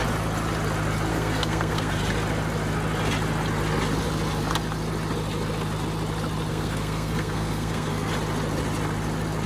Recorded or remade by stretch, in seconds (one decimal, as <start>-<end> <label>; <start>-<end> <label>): 0.0-1.1 recorded; 1.1-1.9 remade; 1.9-6.5 recorded; 6.5-8.1 remade; 8.1-9.5 recorded